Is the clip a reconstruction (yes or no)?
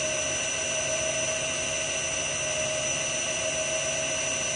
no